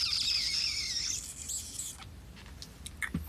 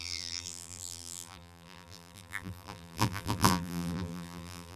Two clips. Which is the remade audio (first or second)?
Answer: second